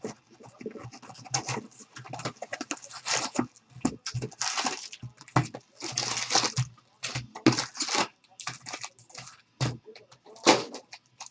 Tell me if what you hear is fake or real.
real